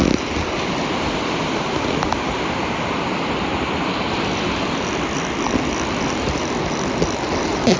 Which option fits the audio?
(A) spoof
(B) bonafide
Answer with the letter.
B